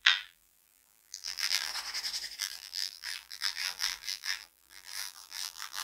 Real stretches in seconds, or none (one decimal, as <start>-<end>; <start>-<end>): 1.7-2.4